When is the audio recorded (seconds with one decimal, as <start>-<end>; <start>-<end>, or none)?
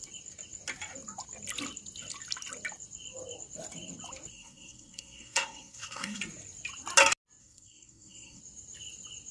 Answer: 0.0-4.3; 6.2-7.4; 8.4-9.3